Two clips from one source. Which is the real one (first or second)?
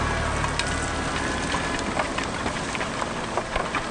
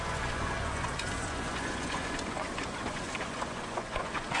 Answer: first